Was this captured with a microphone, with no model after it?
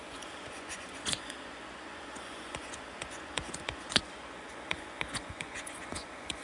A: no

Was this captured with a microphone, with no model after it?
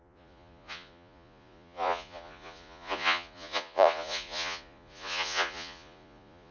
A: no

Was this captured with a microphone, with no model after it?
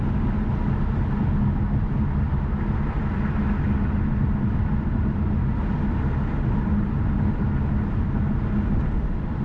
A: yes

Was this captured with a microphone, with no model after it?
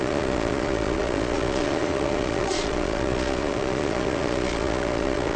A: no